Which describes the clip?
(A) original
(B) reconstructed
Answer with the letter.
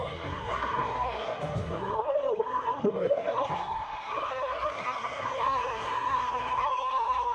B